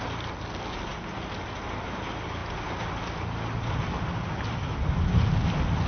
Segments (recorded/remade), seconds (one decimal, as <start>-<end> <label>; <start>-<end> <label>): 0.0-5.9 recorded